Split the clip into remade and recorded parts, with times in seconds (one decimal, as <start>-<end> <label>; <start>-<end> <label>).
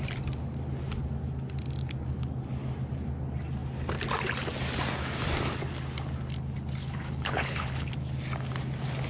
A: 0.0-6.8 recorded; 6.8-7.9 remade; 7.9-9.1 recorded